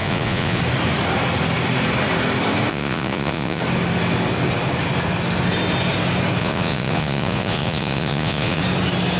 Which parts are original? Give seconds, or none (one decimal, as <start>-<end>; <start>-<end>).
0.6-2.7; 3.6-6.4; 8.6-9.2